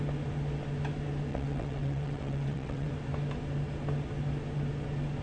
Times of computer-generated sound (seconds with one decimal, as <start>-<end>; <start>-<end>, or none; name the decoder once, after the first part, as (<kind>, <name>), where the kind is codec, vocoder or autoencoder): 1.3-2.9 (vocoder, WaveNeXt)